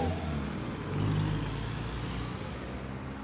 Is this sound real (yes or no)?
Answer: yes